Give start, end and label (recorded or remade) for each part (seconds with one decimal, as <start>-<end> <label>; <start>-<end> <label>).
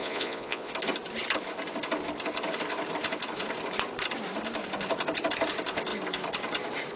0.0-0.7 remade; 0.7-7.0 recorded